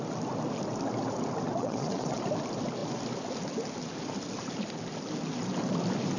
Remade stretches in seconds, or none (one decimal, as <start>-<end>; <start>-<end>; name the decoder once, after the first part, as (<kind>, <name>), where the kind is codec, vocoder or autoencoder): 1.6-2.2 (vocoder, Vocos)